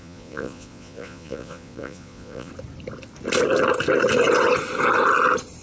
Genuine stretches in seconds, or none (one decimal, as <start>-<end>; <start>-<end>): 2.5-5.6